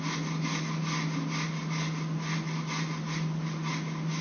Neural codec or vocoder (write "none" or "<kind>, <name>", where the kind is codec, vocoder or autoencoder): none